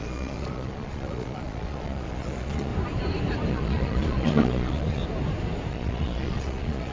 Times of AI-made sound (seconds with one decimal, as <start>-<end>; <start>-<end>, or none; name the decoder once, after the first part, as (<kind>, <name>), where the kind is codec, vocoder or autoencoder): 0.0-2.7 (vocoder, Vocos); 3.5-5.0; 5.7-6.9